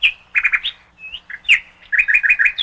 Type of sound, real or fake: real